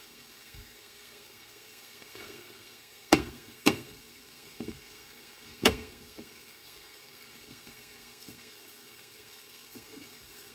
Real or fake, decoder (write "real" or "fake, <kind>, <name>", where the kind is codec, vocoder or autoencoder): fake, codec, SNAC